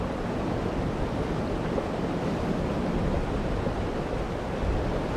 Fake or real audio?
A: real